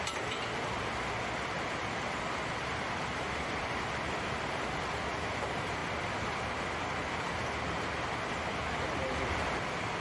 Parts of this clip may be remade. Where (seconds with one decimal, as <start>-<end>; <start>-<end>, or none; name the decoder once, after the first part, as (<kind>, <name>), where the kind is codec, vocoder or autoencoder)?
none